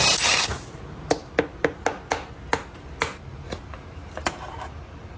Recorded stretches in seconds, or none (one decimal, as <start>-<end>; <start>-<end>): 0.0-5.2